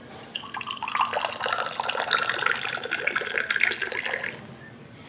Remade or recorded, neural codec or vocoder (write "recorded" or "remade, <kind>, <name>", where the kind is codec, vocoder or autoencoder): recorded